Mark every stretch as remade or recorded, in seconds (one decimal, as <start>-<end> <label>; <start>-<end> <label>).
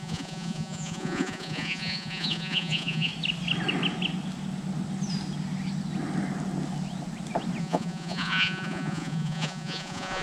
0.0-3.1 remade; 3.1-7.6 recorded; 7.6-10.2 remade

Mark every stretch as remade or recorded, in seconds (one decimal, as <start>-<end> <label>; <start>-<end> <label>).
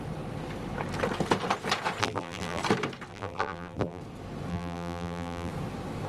0.0-2.0 recorded; 2.0-2.6 remade; 2.6-3.1 recorded; 3.1-4.0 remade; 4.0-4.5 recorded; 4.5-5.5 remade; 5.5-6.1 recorded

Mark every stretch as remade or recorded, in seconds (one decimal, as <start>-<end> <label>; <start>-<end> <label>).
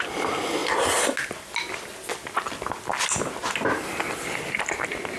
0.0-5.2 recorded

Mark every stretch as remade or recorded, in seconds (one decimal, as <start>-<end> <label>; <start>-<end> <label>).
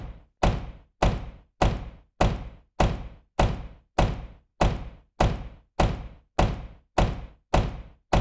0.0-8.2 recorded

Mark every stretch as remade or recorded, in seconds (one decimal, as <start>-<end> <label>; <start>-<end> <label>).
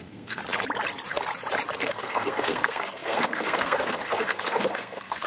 0.0-0.4 remade; 0.4-1.8 recorded; 1.8-5.3 remade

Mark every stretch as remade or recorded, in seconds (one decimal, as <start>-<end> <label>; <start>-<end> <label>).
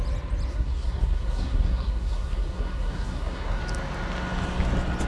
0.0-0.5 recorded; 0.5-3.6 remade; 3.6-5.1 recorded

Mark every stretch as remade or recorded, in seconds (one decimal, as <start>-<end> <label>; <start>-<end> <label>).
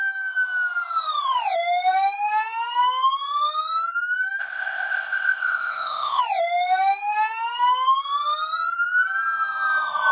0.0-4.4 recorded; 4.4-6.2 remade; 6.2-10.1 recorded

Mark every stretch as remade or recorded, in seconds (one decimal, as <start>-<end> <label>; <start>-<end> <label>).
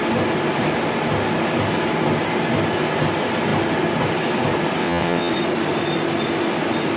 0.0-4.8 recorded; 4.8-5.3 remade; 5.3-7.0 recorded